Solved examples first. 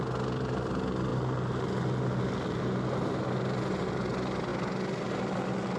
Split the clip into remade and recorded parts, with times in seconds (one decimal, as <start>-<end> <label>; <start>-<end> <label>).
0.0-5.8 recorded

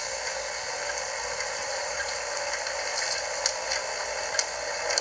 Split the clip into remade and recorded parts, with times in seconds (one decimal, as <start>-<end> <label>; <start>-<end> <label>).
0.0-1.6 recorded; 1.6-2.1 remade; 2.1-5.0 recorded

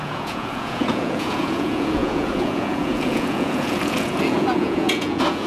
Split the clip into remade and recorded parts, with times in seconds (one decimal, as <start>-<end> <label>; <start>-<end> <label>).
0.0-5.5 remade